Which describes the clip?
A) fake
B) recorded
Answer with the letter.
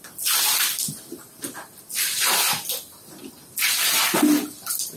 B